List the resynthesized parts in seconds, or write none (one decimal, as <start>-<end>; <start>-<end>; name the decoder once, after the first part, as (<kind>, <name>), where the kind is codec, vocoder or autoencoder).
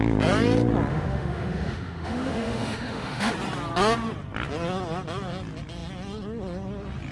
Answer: 0.9-3.3 (autoencoder, DAC-VAE)